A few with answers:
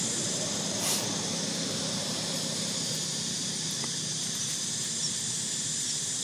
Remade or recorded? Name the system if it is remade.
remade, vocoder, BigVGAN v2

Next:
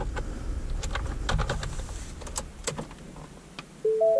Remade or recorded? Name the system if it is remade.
recorded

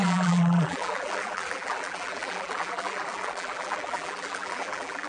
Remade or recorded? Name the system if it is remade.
remade, vocoder, BigVGAN v2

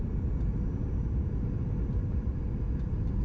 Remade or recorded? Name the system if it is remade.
remade, vocoder, BigVGAN v2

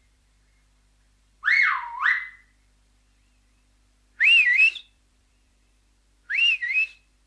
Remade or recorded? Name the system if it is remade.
remade, vocoder, BigVGAN v2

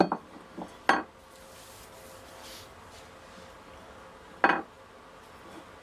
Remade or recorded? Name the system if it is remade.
recorded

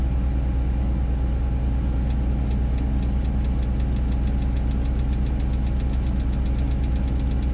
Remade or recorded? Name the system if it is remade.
recorded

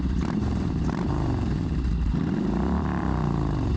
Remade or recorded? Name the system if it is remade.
remade, vocoder, BigVGAN v2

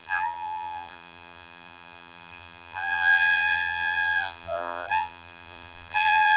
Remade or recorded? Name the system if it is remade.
remade, vocoder, BigVGAN v2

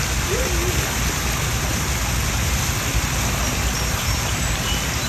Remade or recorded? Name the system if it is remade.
recorded